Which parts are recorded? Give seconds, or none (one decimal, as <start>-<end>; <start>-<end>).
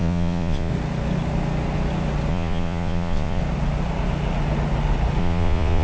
0.7-2.3; 3.4-5.2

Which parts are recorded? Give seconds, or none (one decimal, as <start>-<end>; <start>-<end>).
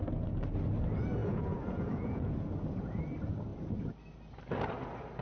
0.0-1.2; 2.3-5.2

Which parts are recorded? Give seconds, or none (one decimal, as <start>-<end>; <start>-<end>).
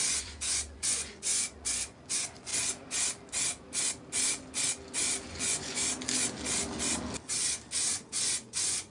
2.5-5.3; 5.8-7.9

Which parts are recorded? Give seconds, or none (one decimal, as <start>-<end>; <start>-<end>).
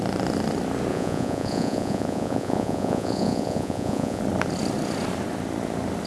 0.0-0.9; 4.2-6.1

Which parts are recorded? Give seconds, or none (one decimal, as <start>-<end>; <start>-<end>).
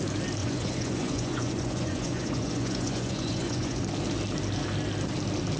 0.0-0.4; 3.8-5.6